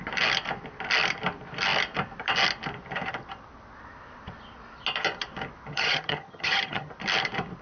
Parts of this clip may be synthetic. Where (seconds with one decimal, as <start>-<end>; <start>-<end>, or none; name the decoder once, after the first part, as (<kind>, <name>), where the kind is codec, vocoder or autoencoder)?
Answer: 5.7-6.9 (vocoder, HiFi-GAN)